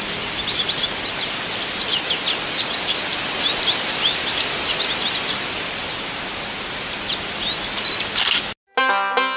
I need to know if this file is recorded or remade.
recorded